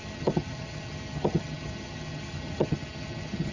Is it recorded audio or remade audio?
remade